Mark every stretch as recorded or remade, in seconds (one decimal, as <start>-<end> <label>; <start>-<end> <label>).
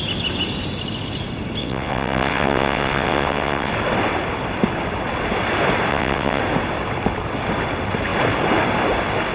0.0-1.6 recorded; 1.6-3.7 remade; 3.7-5.9 recorded; 5.9-6.4 remade; 6.4-9.3 recorded